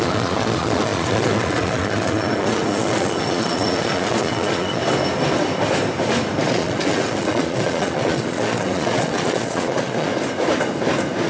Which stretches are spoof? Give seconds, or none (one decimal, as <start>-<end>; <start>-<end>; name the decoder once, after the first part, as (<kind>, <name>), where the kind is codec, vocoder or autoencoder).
0.0-4.8 (vocoder, Vocos); 6.5-10.1